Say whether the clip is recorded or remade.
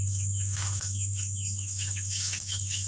remade